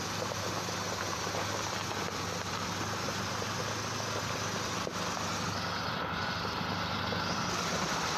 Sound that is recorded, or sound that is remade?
recorded